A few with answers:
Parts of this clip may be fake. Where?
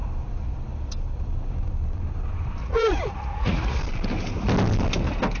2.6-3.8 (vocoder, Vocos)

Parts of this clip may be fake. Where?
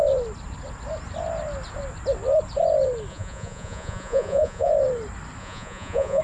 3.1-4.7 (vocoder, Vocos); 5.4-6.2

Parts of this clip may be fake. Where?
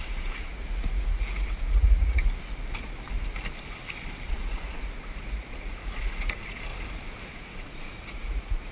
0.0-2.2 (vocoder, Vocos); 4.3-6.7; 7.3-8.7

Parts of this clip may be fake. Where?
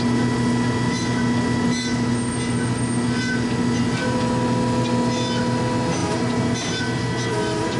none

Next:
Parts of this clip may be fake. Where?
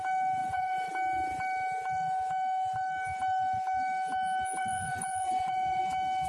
0.4-0.9 (vocoder, Vocos); 4.6-5.8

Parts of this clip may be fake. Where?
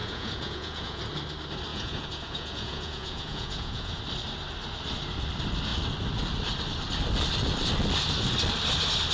0.0-1.0 (vocoder, Vocos); 1.7-4.0